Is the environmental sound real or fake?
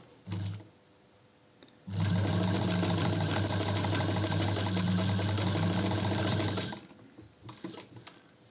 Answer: real